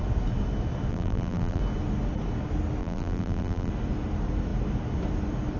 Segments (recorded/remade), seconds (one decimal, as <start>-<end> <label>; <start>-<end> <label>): 0.0-0.9 recorded; 0.9-1.6 remade; 1.6-2.8 recorded; 2.8-3.7 remade; 3.7-5.6 recorded